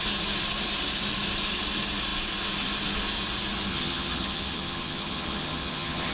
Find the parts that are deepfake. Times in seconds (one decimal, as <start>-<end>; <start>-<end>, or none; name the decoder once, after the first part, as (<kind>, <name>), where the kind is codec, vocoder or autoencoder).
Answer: 3.7-6.1 (vocoder, HiFi-GAN)